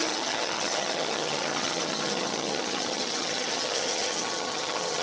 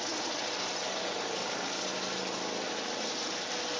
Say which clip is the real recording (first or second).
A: second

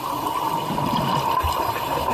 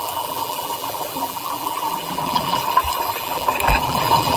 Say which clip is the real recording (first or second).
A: first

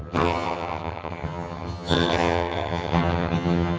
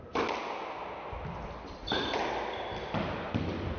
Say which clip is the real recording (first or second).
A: second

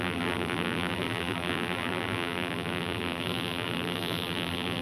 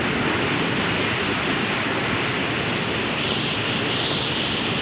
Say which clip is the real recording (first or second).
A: second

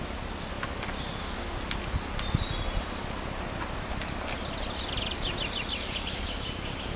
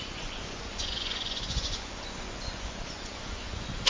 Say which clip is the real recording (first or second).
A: first